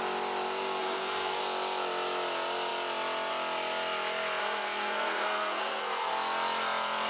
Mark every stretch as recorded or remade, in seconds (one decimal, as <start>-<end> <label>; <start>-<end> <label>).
0.0-0.8 recorded; 0.8-1.4 remade; 1.4-4.4 recorded; 4.4-6.1 remade; 6.1-7.1 recorded